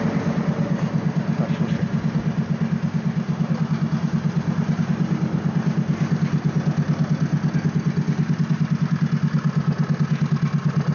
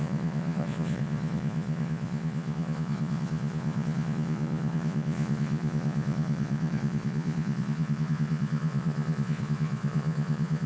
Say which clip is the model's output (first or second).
second